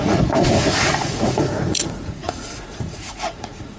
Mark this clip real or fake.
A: fake